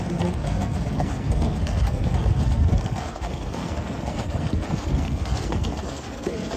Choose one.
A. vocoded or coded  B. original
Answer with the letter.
A